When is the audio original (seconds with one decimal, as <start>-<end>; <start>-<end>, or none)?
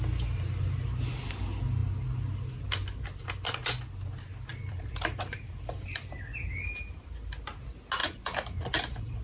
0.0-4.5; 6.2-8.0